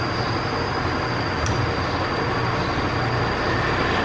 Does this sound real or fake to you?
real